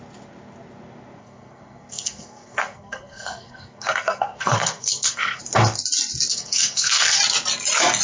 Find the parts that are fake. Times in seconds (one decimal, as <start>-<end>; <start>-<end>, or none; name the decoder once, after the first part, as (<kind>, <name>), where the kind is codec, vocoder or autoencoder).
1.2-5.4 (codec, SNAC); 6.3-7.2